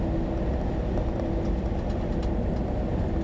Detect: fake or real real